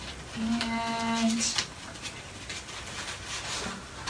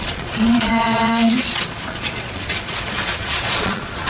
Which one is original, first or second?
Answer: first